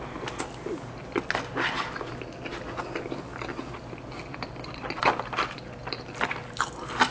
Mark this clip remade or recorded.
recorded